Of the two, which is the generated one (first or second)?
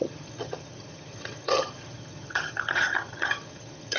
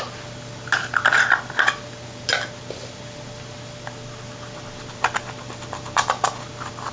first